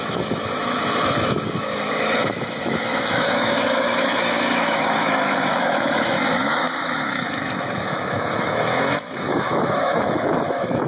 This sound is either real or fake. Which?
fake